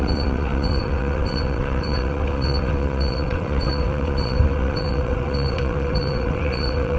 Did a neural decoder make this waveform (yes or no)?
yes